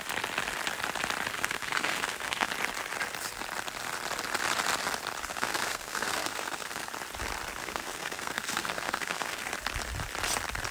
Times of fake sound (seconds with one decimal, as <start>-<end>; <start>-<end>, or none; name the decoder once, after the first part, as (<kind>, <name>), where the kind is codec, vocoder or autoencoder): 1.3-2.5 (codec, SNAC); 5.3-6.9; 7.6-9.5